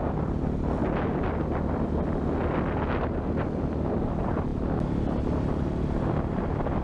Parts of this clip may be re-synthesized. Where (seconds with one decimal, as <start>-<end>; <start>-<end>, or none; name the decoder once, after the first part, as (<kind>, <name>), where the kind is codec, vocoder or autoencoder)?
none